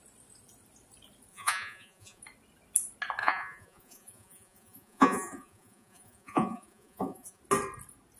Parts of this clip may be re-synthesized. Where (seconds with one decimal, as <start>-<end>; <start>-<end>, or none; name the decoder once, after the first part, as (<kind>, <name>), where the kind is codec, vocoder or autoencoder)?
1.3-2.2 (vocoder, Vocos); 3.2-7.4